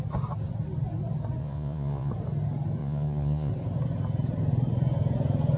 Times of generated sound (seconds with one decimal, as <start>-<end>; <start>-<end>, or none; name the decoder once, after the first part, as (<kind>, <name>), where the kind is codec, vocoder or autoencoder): 1.4-2.1 (vocoder, Vocos); 2.8-3.5